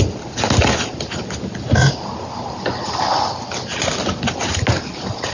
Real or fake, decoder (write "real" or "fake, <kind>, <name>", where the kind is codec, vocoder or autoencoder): real